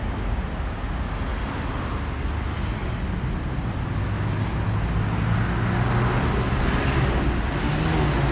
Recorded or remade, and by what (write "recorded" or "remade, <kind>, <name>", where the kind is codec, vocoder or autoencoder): recorded